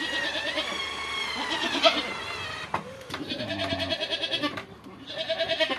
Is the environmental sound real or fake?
real